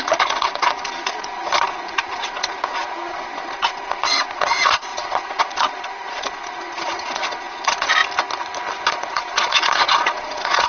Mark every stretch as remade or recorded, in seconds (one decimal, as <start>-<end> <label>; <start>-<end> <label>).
0.0-8.0 remade; 8.0-8.9 recorded; 8.9-10.7 remade